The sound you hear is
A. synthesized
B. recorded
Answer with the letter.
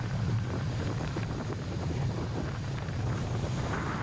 A